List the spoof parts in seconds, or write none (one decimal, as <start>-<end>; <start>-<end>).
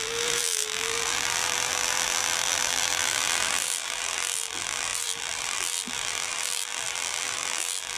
0.0-8.0